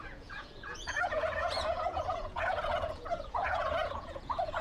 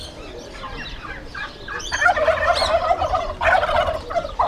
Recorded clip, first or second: second